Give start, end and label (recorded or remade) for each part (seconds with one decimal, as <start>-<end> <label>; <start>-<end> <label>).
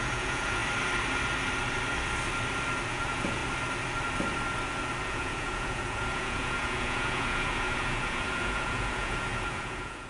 0.0-0.6 remade; 0.6-2.9 recorded; 2.9-3.4 remade; 3.4-5.1 recorded; 5.1-10.1 remade